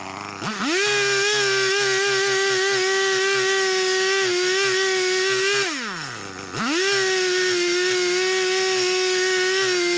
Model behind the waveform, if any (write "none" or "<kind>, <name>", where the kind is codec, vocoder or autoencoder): none